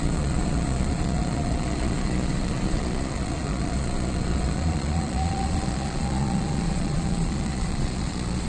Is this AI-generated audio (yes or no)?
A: yes